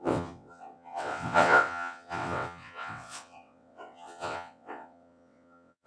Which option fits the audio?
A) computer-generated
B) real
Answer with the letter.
A